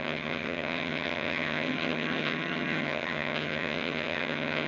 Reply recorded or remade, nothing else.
remade